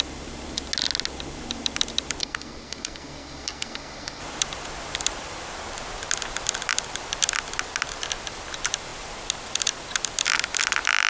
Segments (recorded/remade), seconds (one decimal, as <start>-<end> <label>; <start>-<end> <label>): 0.0-2.2 recorded; 2.2-4.2 remade; 4.2-11.1 recorded